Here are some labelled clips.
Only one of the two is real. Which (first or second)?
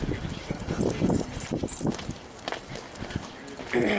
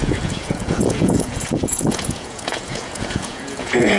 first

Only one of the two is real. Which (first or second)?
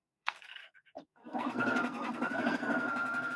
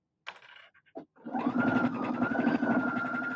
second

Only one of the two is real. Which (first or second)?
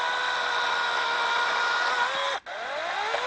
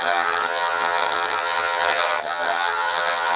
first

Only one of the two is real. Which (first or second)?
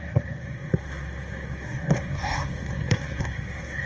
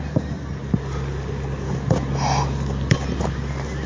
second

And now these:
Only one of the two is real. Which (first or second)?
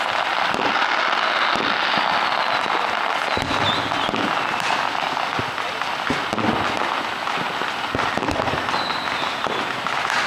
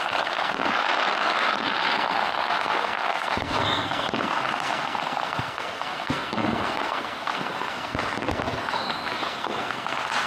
first